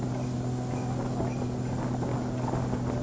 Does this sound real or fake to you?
real